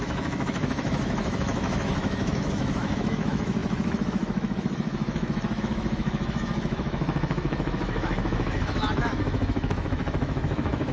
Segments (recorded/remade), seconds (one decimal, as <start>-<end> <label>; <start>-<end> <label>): 0.0-10.9 remade